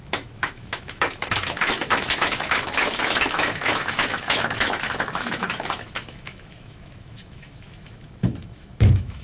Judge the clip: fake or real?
fake